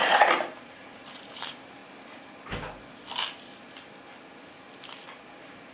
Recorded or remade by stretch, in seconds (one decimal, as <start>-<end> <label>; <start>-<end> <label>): 0.0-1.8 remade; 1.8-5.2 recorded; 5.2-5.7 remade